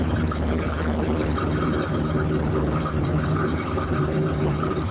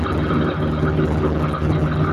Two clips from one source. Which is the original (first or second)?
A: second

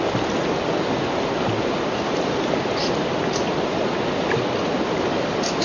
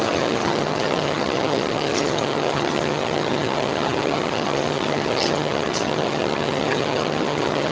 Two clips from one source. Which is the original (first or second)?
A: first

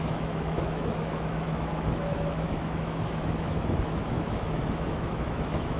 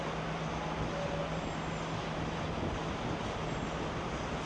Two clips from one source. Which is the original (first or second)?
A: second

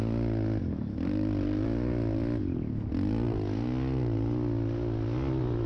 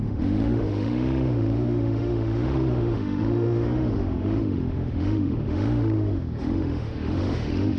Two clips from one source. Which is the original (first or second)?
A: first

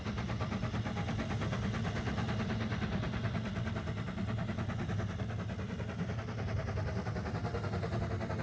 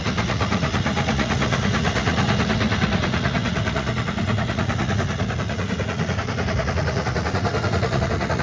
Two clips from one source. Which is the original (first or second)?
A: first